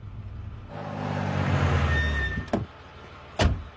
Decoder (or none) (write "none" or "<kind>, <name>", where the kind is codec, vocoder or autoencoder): none